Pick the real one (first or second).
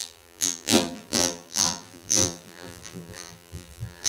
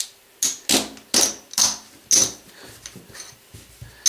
second